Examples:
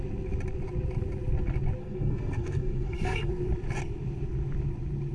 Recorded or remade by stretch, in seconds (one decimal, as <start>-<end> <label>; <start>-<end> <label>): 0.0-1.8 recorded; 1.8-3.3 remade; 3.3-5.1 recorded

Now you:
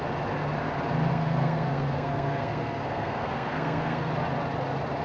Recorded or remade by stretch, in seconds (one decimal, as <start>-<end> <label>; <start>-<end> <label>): 0.0-1.1 recorded; 1.1-4.1 remade; 4.1-5.0 recorded

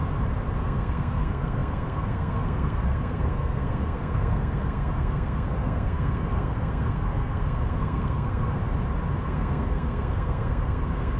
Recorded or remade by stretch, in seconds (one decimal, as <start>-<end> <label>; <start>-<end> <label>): 0.0-0.6 recorded; 0.6-8.6 remade; 8.6-9.2 recorded; 9.2-11.2 remade